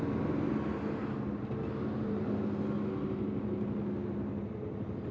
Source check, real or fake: real